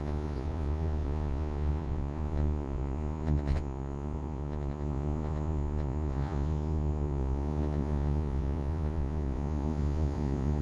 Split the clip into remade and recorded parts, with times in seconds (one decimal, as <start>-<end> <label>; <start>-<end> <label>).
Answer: 0.0-10.6 remade